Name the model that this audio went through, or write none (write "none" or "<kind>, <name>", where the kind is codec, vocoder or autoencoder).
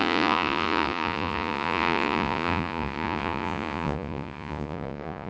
vocoder, Vocos